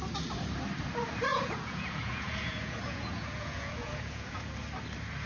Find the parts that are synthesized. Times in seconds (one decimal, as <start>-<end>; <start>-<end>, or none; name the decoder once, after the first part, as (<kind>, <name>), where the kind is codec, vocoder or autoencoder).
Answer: 1.3-4.5 (vocoder, Vocos)